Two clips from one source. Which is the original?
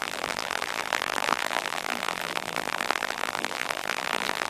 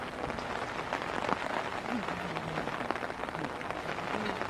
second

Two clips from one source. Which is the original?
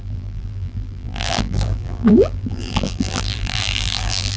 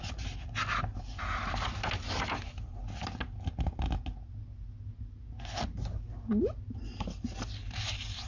second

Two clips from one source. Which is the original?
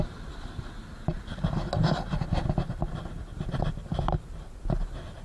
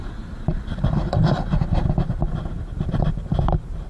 first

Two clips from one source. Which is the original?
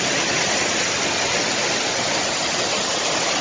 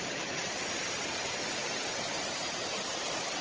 first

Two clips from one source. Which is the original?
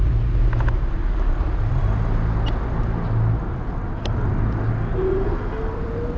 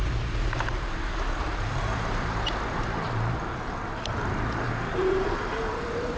first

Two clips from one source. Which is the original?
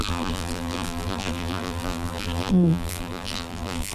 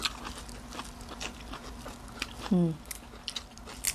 second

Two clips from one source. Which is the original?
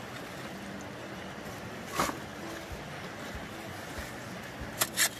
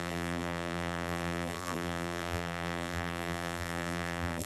first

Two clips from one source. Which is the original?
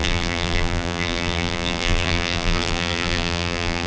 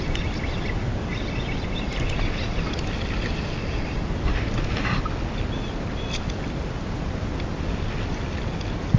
second